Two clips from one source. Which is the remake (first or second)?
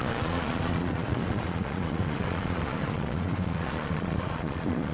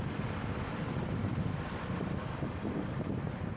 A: first